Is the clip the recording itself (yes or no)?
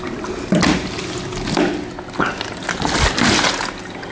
yes